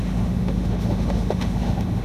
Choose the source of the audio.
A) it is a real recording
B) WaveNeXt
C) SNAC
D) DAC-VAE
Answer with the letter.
D